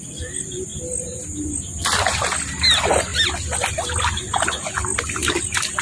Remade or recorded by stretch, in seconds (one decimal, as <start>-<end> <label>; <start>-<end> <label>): 0.0-5.8 recorded